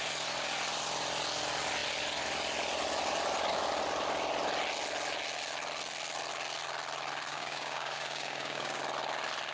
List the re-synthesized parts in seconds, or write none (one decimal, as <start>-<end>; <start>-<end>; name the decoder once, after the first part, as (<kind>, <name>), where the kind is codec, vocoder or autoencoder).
7.3-8.8 (codec, DAC)